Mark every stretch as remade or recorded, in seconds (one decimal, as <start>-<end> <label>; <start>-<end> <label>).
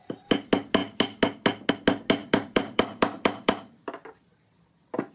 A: 0.0-2.2 recorded; 2.2-3.9 remade; 3.9-5.1 recorded